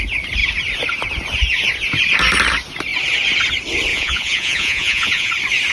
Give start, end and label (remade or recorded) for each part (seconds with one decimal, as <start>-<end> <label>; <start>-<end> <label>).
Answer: 0.0-3.9 recorded; 3.9-5.3 remade; 5.3-5.7 recorded